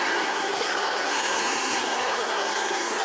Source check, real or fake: fake